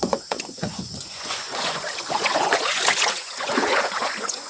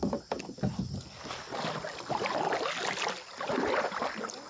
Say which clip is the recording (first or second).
second